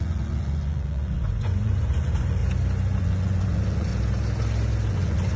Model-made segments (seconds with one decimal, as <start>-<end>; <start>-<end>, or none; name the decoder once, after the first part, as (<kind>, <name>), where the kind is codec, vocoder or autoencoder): 0.0-2.4 (vocoder, Vocos); 3.0-3.9; 4.9-5.4